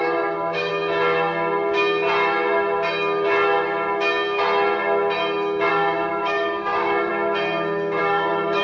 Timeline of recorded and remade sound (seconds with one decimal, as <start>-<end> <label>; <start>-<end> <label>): 0.0-0.7 remade; 0.7-5.7 recorded; 5.7-7.1 remade; 7.1-8.0 recorded; 8.0-8.6 remade